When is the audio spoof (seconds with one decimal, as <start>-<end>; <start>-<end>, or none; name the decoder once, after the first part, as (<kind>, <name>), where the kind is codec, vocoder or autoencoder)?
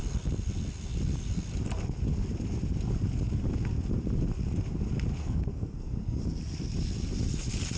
5.2-6.2 (codec, SNAC)